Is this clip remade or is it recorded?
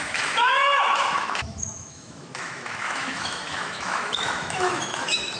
remade